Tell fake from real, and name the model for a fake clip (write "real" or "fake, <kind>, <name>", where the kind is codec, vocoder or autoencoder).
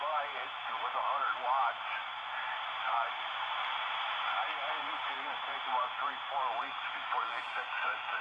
fake, vocoder, BigVGAN v2